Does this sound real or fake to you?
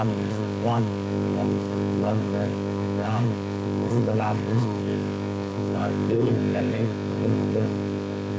fake